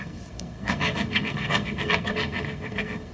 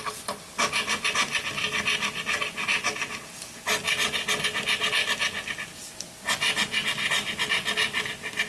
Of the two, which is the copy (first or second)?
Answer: first